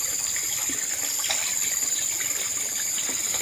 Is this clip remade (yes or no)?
no